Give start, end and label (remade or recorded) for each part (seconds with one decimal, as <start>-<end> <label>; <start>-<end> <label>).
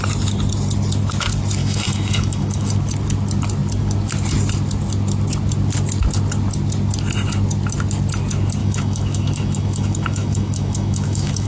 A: 0.0-1.6 recorded; 1.6-2.7 remade; 2.7-8.6 recorded; 8.6-11.5 remade